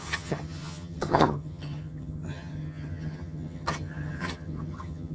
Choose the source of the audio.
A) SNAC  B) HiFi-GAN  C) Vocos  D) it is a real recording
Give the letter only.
B